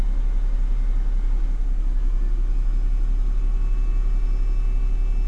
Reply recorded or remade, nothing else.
recorded